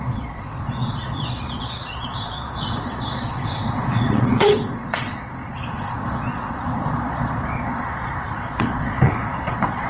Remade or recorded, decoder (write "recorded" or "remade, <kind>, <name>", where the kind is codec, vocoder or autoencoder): remade, vocoder, Vocos